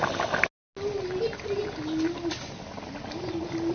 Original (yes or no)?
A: yes